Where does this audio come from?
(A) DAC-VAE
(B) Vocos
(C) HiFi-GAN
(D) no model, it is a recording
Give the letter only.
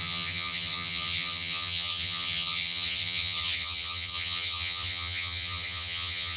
C